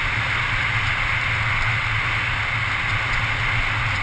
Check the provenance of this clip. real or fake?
real